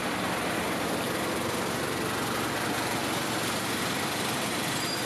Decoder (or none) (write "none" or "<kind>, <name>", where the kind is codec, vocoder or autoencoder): none